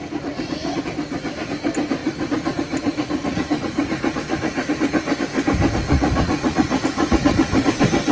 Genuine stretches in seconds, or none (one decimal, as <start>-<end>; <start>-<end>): 0.8-2.0; 4.8-5.9; 7.6-8.1